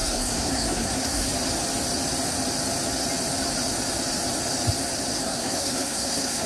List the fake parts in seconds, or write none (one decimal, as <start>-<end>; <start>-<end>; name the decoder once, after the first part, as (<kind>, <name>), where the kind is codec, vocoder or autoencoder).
0.0-1.3 (codec, SNAC); 5.2-6.5